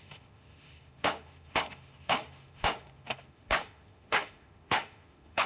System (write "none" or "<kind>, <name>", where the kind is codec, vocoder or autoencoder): autoencoder, DAC-VAE